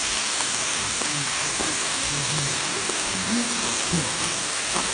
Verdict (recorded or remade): remade